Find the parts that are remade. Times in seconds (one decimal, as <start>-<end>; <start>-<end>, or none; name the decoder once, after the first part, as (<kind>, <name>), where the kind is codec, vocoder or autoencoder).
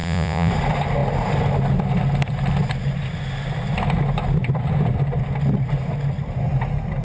0.0-0.5 (vocoder, Vocos)